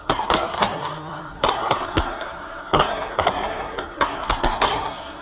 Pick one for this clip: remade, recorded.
remade